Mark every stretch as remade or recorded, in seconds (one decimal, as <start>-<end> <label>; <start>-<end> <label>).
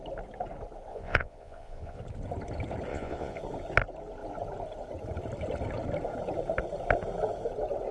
0.0-0.9 recorded; 0.9-2.0 remade; 2.0-2.9 recorded; 2.9-3.4 remade; 3.4-7.9 recorded